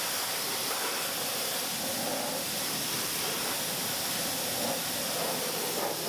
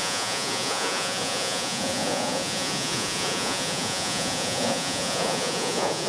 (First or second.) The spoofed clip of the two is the second